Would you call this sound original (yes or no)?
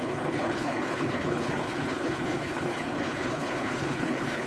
no